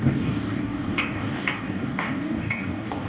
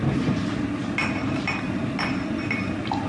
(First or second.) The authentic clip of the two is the second